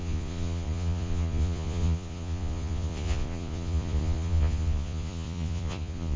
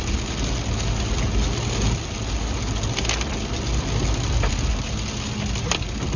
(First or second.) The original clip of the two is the second